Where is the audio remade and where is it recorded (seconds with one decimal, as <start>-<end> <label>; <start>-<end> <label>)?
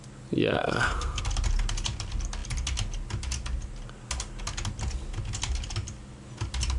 0.0-0.5 recorded; 0.5-1.2 remade; 1.2-6.8 recorded